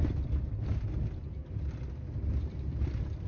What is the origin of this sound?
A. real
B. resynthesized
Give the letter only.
A